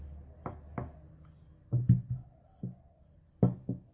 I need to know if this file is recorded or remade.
recorded